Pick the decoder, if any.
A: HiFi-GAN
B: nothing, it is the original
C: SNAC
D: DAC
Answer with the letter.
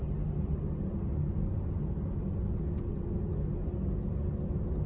B